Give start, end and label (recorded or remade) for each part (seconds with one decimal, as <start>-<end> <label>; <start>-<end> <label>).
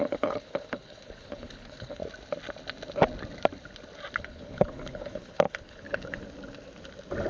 0.0-2.0 remade; 2.0-4.2 recorded; 4.2-6.2 remade; 6.2-7.3 recorded